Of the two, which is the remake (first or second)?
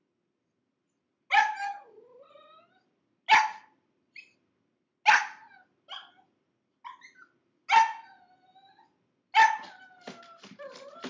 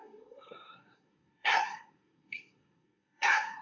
second